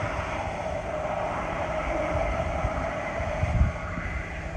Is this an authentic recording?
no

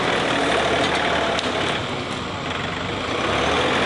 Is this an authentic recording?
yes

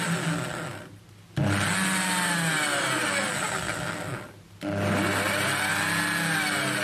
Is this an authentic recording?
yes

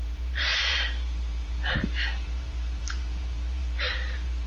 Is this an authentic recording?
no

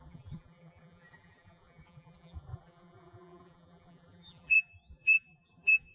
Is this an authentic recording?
no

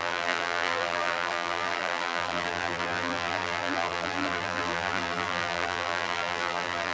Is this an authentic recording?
no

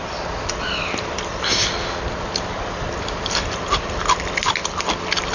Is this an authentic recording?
no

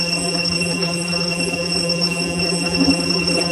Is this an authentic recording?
no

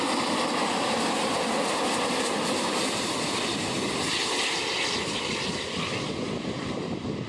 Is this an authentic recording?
no